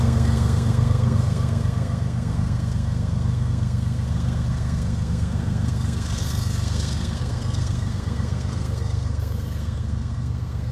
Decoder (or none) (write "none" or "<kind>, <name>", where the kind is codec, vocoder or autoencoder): codec, SNAC